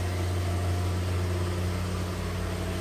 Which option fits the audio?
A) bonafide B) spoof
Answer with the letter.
A